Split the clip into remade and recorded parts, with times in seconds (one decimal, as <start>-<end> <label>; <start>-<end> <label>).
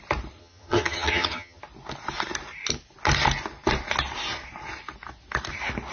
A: 0.0-0.4 recorded; 0.4-1.6 remade; 1.6-5.9 recorded